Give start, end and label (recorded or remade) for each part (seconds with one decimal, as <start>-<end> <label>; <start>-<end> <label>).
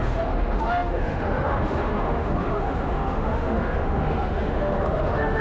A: 0.0-5.4 remade